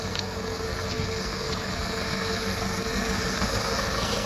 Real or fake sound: fake